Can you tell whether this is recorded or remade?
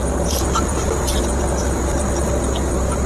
recorded